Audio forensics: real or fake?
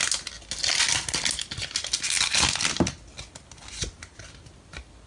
real